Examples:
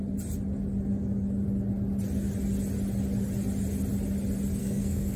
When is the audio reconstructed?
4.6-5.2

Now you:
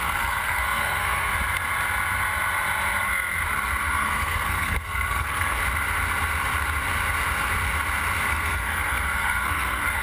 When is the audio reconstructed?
0.0-1.3; 3.8-5.6; 8.3-10.0

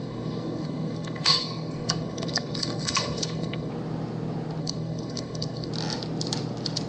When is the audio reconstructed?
0.0-3.7; 4.6-5.7

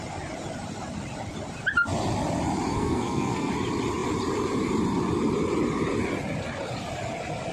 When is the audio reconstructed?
2.7-3.5

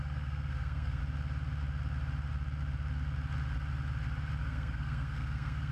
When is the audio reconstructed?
0.0-1.0; 4.4-5.7